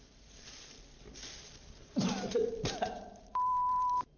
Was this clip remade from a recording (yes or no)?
yes